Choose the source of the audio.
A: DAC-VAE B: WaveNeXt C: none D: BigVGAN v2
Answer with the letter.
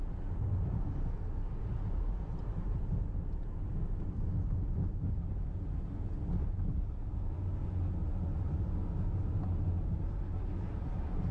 C